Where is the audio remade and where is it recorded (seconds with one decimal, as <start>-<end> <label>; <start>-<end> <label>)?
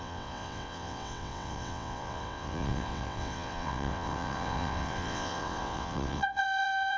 0.0-7.0 remade